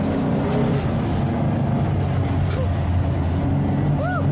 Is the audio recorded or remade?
recorded